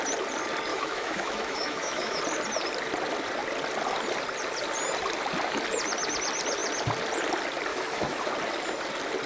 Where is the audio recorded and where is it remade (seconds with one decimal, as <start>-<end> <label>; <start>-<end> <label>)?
0.0-0.7 recorded; 0.7-2.2 remade; 2.2-7.7 recorded; 7.7-8.3 remade; 8.3-9.3 recorded